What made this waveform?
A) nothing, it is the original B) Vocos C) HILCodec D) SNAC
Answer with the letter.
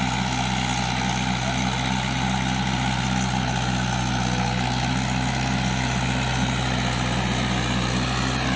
A